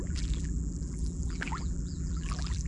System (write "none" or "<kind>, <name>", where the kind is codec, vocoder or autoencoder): vocoder, BigVGAN v2